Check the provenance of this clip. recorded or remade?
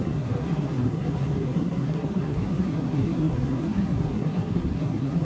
remade